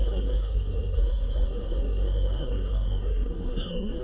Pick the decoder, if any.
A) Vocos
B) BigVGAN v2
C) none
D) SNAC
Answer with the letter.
D